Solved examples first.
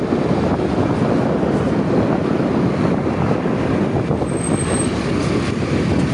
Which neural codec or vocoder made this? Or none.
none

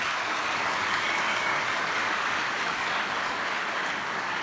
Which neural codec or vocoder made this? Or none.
codec, DAC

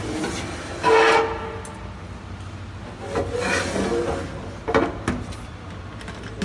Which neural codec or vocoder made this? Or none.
none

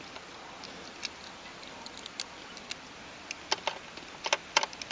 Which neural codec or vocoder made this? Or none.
none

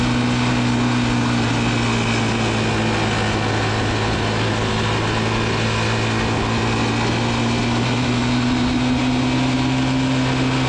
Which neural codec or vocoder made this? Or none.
none